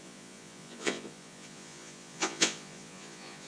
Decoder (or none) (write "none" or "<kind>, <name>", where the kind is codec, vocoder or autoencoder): vocoder, Vocos